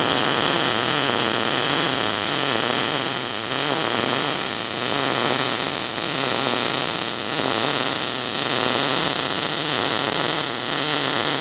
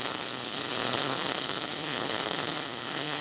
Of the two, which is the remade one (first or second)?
second